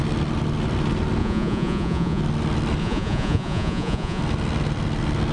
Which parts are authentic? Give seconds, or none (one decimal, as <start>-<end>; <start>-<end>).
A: 0.0-1.2; 2.2-2.8; 4.2-5.3